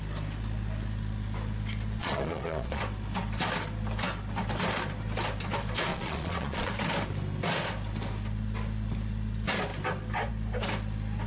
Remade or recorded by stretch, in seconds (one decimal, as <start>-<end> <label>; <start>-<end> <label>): 0.0-2.0 recorded; 2.0-2.8 remade; 2.8-5.9 recorded; 5.9-6.7 remade; 6.7-11.3 recorded

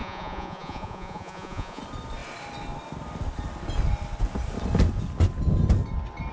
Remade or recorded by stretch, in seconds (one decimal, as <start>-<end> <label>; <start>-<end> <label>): 0.0-1.8 remade; 1.8-6.3 recorded

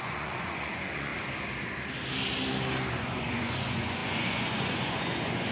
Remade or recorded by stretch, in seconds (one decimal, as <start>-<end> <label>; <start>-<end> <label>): 0.0-1.1 remade; 1.1-2.9 recorded; 2.9-5.5 remade

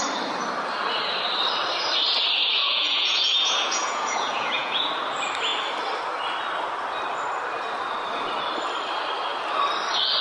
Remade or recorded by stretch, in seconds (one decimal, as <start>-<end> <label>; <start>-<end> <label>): 0.0-2.6 recorded; 2.6-4.9 remade; 4.9-10.2 recorded